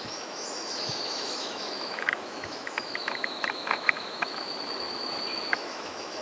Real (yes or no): no